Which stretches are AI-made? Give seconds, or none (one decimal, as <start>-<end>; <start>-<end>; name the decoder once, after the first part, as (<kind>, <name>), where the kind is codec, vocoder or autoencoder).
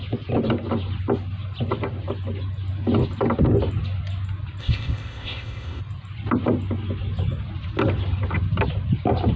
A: 4.6-5.8 (codec, ZipCodec)